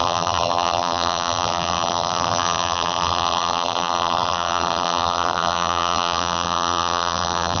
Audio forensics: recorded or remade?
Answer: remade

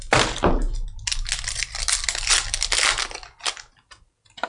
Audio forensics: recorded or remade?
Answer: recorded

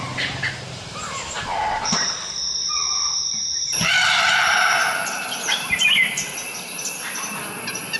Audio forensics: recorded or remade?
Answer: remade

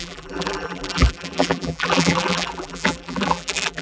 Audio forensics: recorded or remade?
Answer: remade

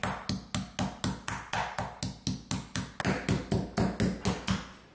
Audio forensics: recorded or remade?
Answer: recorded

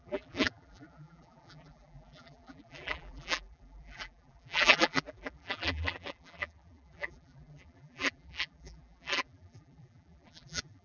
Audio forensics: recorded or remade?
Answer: remade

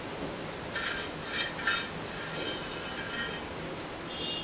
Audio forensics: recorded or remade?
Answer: recorded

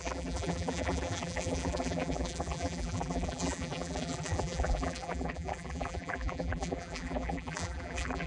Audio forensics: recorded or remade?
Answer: remade